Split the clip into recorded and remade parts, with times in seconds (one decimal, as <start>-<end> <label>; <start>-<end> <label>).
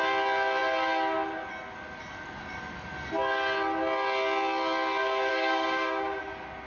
0.0-5.3 recorded; 5.3-6.2 remade; 6.2-6.7 recorded